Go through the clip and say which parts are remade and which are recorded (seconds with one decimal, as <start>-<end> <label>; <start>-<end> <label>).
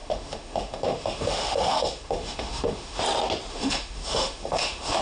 0.0-3.0 remade; 3.0-3.5 recorded; 3.5-5.0 remade